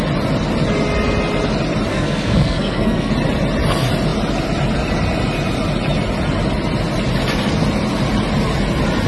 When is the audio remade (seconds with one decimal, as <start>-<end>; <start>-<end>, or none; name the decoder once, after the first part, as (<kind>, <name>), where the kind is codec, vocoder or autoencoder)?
1.9-3.1 (codec, SNAC)